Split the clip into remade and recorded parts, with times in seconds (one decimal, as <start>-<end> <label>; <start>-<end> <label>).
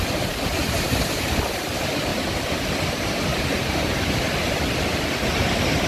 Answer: 0.0-0.6 recorded; 0.6-1.7 remade; 1.7-3.3 recorded; 3.3-4.2 remade; 4.2-5.9 recorded